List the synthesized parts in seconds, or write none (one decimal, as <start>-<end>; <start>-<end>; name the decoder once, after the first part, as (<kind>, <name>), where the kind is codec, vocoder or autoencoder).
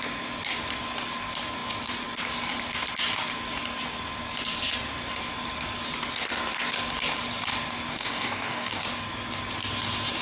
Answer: 7.9-8.8 (codec, DAC)